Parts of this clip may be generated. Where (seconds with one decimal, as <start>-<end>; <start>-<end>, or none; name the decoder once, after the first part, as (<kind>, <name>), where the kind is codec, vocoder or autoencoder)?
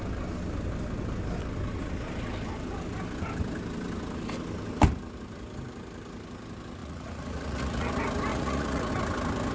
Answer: 6.8-7.9 (vocoder, Vocos); 8.3-8.9